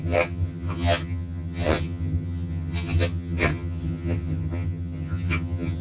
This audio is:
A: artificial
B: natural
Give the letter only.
A